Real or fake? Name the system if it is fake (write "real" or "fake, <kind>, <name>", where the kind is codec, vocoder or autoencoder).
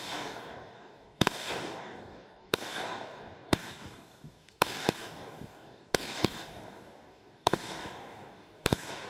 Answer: fake, codec, DAC